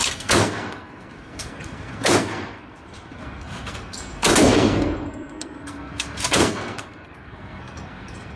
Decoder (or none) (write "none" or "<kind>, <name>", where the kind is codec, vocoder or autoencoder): codec, SNAC